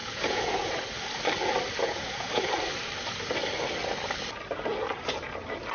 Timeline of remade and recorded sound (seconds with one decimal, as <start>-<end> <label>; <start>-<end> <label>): 0.0-0.7 remade; 0.7-1.8 recorded; 1.8-2.5 remade; 2.5-5.7 recorded